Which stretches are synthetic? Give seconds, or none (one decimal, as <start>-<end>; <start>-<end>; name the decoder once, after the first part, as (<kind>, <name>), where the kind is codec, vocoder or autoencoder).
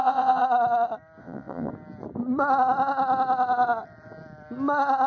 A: 0.0-0.4 (vocoder, WaveNeXt); 1.2-1.7